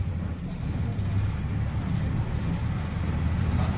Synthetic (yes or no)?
no